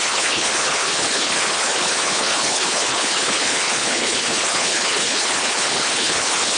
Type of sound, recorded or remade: remade